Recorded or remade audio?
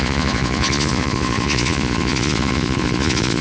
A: remade